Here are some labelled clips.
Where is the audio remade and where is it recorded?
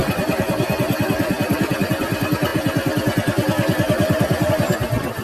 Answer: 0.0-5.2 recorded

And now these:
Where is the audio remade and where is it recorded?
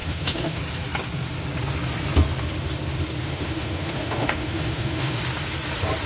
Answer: 0.0-0.6 remade; 0.6-3.2 recorded; 3.2-5.2 remade; 5.2-6.1 recorded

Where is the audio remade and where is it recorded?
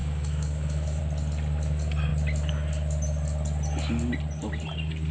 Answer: 0.0-1.0 remade; 1.0-5.1 recorded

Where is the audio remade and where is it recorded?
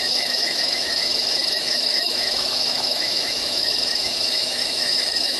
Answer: 0.0-5.4 remade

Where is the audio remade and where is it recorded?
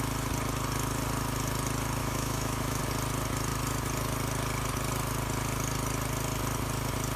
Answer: 0.0-2.0 recorded; 2.0-2.8 remade; 2.8-7.2 recorded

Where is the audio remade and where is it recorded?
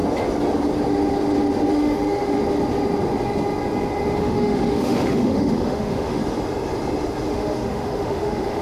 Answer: 0.0-1.7 recorded; 1.7-2.4 remade; 2.4-4.2 recorded; 4.2-6.2 remade; 6.2-7.3 recorded; 7.3-8.6 remade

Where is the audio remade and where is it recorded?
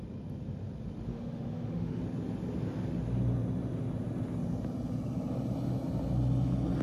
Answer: 0.0-1.1 recorded; 1.1-2.0 remade; 2.0-6.8 recorded